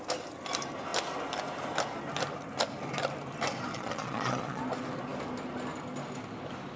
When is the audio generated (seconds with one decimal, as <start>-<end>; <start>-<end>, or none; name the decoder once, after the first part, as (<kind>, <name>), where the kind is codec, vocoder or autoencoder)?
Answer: 3.7-4.6 (vocoder, Vocos)